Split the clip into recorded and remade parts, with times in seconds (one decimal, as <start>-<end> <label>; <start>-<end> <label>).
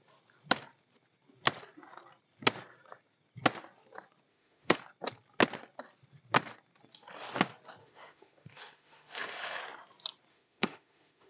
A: 0.0-4.3 recorded; 4.3-4.8 remade; 4.8-7.8 recorded; 7.8-9.6 remade; 9.6-10.3 recorded; 10.3-11.3 remade